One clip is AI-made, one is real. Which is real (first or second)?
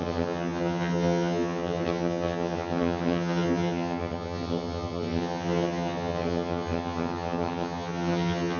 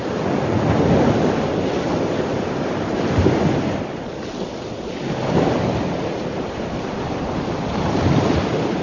second